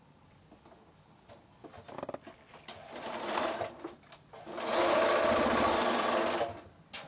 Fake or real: real